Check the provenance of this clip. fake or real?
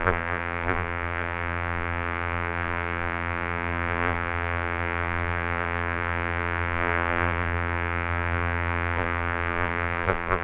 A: fake